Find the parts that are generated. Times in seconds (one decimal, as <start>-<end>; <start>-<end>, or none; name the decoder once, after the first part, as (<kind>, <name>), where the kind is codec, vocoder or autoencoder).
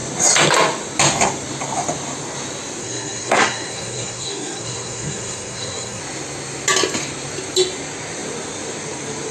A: 2.8-6.0 (codec, SNAC)